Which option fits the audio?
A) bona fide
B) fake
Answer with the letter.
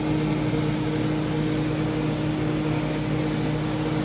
A